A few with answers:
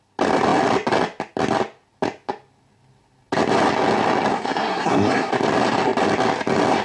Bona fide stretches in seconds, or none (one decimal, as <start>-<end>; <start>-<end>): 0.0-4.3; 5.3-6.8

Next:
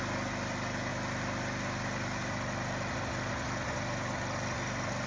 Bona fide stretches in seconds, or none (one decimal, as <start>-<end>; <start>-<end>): 0.0-0.9; 3.3-5.1

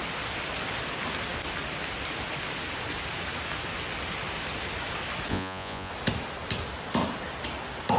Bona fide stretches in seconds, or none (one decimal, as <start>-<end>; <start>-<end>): 0.0-5.3; 5.9-8.0

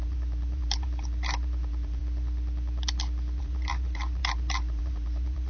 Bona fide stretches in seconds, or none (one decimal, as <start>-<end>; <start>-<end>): 2.0-3.4

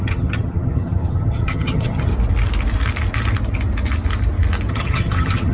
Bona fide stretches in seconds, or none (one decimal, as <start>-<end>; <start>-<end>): 2.1-4.7

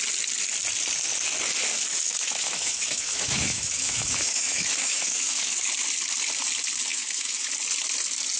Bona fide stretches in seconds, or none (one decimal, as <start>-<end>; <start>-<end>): 0.0-1.9; 5.7-6.9; 7.5-8.4

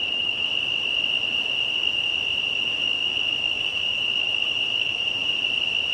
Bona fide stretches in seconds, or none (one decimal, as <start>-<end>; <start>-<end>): 0.5-2.6; 5.2-5.9

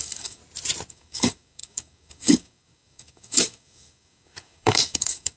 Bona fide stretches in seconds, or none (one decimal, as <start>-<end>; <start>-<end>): 0.4-0.9